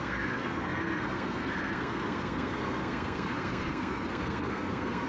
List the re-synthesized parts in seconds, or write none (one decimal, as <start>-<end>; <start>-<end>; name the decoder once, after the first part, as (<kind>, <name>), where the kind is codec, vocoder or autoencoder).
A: 0.0-5.1 (codec, SNAC)